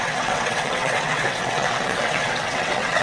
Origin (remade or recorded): remade